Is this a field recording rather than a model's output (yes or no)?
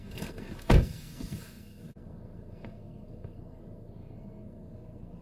no